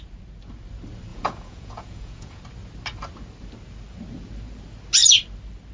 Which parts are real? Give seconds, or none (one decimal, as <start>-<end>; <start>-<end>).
0.0-1.1; 2.4-5.7